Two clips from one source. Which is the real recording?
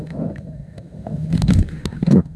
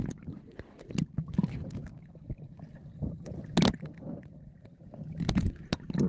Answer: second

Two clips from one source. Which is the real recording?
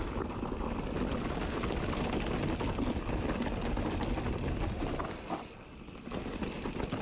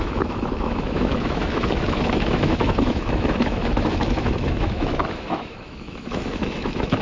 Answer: first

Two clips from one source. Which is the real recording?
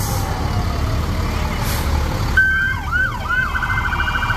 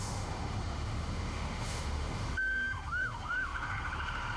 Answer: first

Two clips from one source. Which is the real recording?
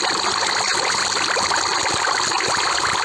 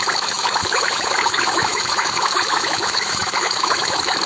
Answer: first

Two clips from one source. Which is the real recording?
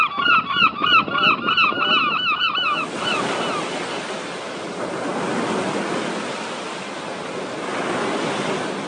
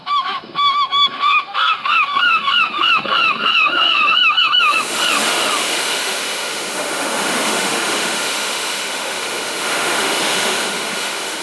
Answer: first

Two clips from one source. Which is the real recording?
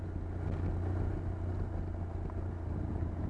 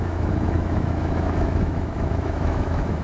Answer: first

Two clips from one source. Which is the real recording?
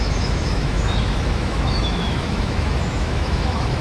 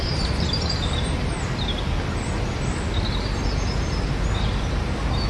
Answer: second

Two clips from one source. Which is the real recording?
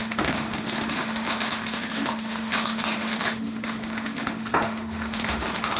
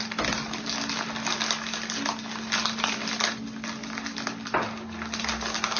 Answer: second